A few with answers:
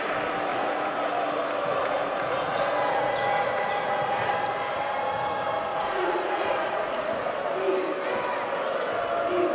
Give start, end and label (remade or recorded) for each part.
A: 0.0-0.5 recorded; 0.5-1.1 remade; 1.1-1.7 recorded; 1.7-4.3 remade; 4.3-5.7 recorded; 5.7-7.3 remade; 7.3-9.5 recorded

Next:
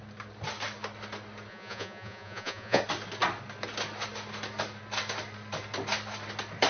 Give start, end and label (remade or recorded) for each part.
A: 0.0-1.5 recorded; 1.5-2.8 remade; 2.8-6.7 recorded

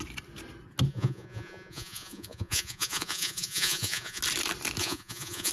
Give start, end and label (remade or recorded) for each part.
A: 0.0-0.9 recorded; 0.9-4.2 remade; 4.2-4.8 recorded; 4.8-5.5 remade

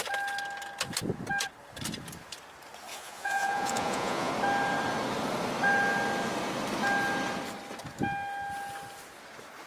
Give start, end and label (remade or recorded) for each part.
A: 0.0-2.9 recorded; 2.9-4.3 remade; 4.3-9.7 recorded

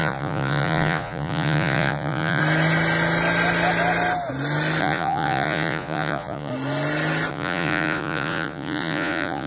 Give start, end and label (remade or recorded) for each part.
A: 0.0-2.4 remade; 2.4-4.8 recorded; 4.8-6.5 remade; 6.5-7.3 recorded; 7.3-9.5 remade

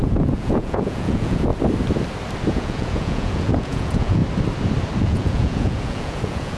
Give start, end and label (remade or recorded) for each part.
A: 0.0-1.5 remade; 1.5-2.5 recorded; 2.5-4.2 remade; 4.2-5.0 recorded; 5.0-6.6 remade